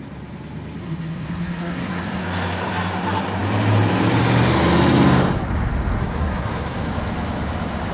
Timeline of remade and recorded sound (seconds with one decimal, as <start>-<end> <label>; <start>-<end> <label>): 0.0-0.8 recorded; 0.8-2.2 remade; 2.2-6.0 recorded; 6.0-6.9 remade; 6.9-7.9 recorded

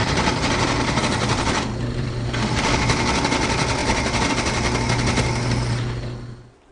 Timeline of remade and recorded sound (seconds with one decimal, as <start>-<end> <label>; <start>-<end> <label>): 0.0-2.7 remade; 2.7-3.8 recorded; 3.8-4.3 remade; 4.3-6.7 recorded

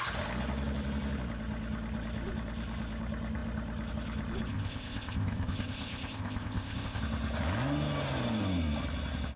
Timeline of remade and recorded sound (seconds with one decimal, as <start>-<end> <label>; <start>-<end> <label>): 0.0-4.5 recorded; 4.5-7.0 remade; 7.0-9.4 recorded

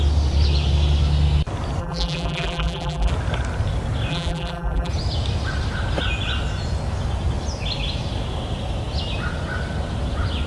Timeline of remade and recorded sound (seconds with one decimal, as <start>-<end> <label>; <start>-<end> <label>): 0.0-1.8 recorded; 1.8-3.1 remade; 3.1-4.1 recorded; 4.1-4.9 remade; 4.9-10.5 recorded

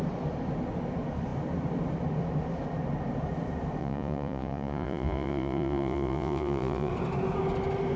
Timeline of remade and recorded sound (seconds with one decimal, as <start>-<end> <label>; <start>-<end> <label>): 0.0-3.8 recorded; 3.8-6.9 remade; 6.9-8.0 recorded

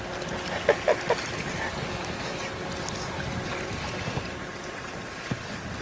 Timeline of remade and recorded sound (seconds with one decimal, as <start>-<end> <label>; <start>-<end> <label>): 0.0-5.8 recorded

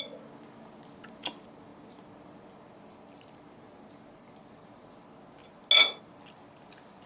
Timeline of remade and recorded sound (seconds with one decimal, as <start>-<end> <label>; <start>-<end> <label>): 0.0-7.1 recorded

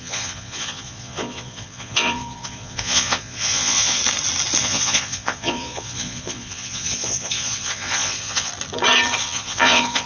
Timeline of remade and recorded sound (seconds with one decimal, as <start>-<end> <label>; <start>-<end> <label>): 0.0-4.0 remade; 4.0-4.6 recorded; 4.6-8.5 remade; 8.5-9.2 recorded; 9.2-10.1 remade